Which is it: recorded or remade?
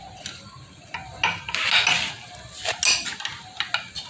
recorded